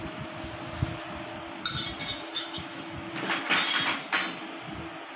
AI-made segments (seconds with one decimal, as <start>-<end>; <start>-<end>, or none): 2.3-3.1